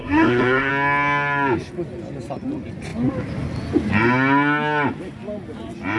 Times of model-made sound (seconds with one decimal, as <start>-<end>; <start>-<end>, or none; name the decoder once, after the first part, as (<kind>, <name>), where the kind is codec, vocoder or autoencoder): 0.0-0.7 (codec, SNAC)